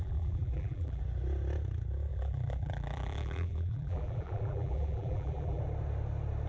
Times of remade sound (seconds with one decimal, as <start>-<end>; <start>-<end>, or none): 0.0-1.0; 2.1-5.6